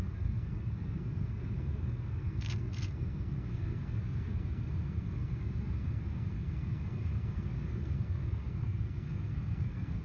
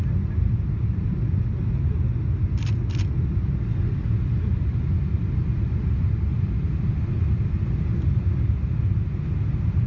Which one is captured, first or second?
second